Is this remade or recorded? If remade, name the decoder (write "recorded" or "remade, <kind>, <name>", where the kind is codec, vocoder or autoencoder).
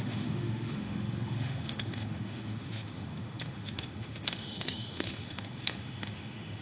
remade, autoencoder, DAC-VAE